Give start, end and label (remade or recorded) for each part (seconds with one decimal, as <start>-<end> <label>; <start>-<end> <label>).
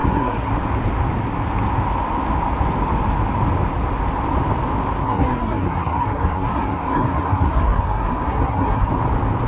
0.0-0.5 remade; 0.5-5.0 recorded; 5.0-8.9 remade; 8.9-9.5 recorded